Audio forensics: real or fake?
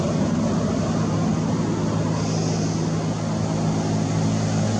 real